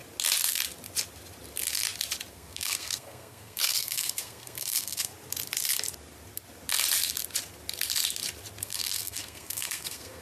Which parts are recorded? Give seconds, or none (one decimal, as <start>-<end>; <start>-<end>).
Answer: 0.0-2.3; 5.1-8.6